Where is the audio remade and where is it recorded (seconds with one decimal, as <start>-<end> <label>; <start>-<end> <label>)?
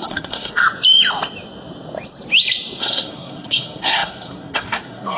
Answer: 0.0-0.6 remade; 0.6-2.8 recorded; 2.8-5.2 remade